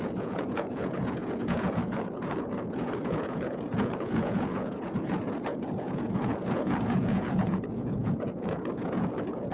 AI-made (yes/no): yes